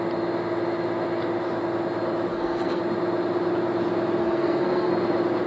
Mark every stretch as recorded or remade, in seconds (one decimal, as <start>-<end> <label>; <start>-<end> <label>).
0.0-2.3 recorded; 2.3-2.8 remade; 2.8-4.2 recorded; 4.2-4.9 remade; 4.9-5.5 recorded